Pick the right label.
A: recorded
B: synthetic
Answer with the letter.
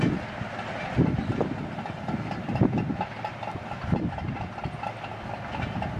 A